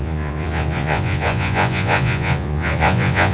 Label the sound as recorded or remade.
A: remade